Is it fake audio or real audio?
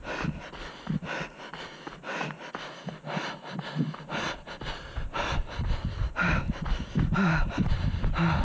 real